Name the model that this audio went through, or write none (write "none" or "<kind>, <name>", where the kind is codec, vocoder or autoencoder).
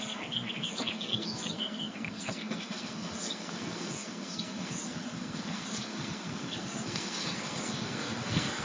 codec, SNAC